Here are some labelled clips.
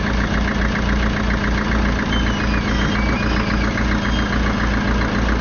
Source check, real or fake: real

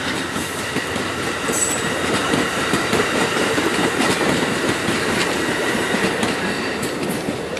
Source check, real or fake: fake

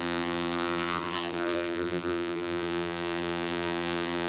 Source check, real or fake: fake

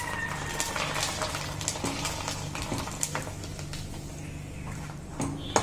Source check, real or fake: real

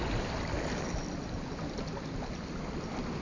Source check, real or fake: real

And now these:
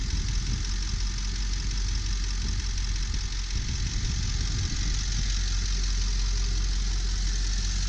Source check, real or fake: real